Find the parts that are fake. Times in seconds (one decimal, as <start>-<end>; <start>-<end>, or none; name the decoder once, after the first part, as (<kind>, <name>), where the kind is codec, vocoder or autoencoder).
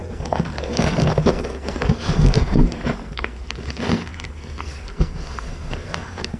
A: 0.0-6.4 (codec, SNAC)